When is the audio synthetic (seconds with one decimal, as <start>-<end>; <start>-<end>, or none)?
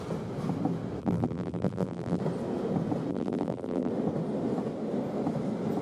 1.0-2.2; 3.1-3.9